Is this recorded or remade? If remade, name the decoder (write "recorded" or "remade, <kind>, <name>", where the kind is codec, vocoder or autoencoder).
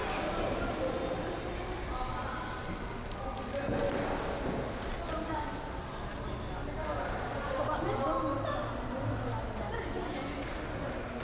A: recorded